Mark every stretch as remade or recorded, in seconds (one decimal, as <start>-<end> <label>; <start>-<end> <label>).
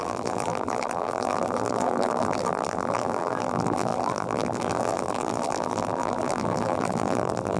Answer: 0.0-7.6 remade